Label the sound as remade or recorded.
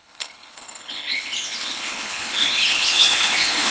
remade